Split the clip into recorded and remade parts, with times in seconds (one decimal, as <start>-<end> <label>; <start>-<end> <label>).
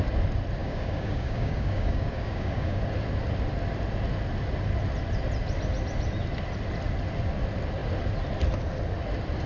0.0-0.6 recorded; 0.6-2.8 remade; 2.8-9.5 recorded